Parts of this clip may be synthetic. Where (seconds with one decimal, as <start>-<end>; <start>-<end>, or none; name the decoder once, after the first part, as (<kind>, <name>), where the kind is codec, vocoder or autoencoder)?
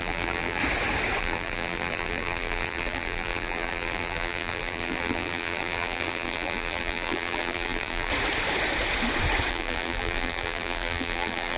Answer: 0.0-0.6 (vocoder, BigVGAN v2); 1.2-8.1; 9.5-11.6